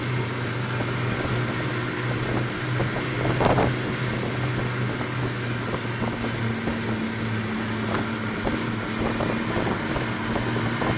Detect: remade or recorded recorded